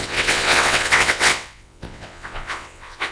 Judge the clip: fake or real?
fake